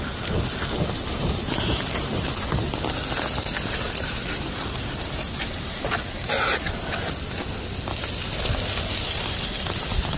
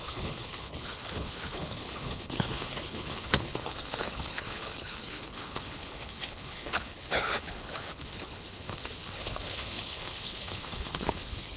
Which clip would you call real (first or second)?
first